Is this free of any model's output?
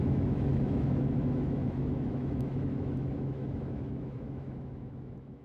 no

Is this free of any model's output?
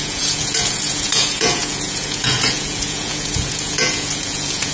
no